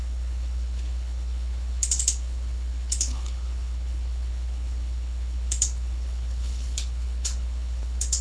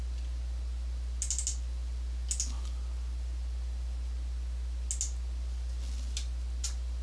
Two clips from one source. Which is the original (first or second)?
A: second